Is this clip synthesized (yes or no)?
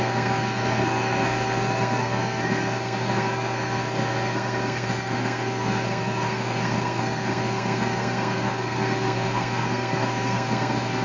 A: yes